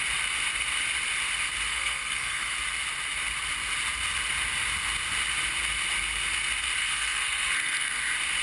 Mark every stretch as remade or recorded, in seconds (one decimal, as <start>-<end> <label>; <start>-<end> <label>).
0.0-1.7 recorded; 1.7-2.5 remade; 2.5-6.8 recorded; 6.8-8.0 remade; 8.0-8.4 recorded